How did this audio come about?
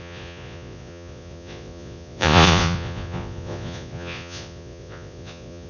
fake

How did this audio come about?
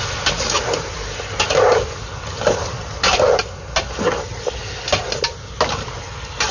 real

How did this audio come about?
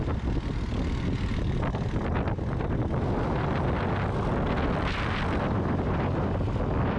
real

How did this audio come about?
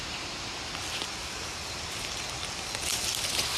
real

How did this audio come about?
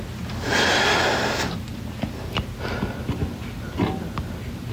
real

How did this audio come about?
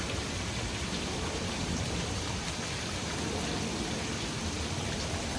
fake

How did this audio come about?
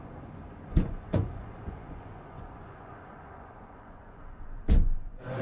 fake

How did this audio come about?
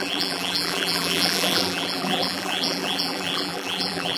fake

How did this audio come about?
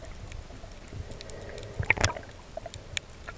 real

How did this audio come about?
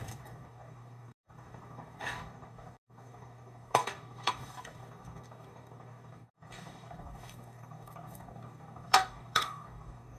fake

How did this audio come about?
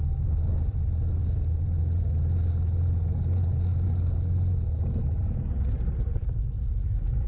real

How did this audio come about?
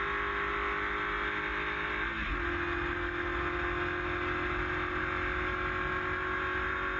real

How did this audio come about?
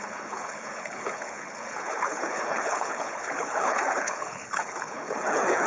fake